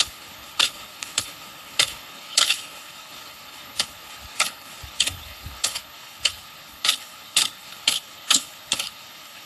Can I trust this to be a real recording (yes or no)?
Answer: no